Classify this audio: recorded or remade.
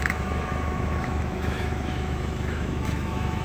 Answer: remade